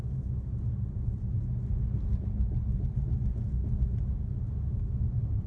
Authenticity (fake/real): real